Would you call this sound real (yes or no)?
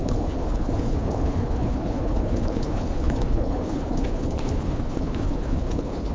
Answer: no